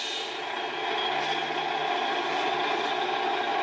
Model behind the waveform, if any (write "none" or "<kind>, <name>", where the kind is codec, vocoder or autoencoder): none